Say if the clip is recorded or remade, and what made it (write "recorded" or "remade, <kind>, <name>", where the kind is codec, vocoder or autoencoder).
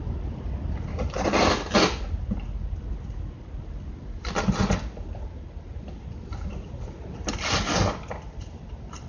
recorded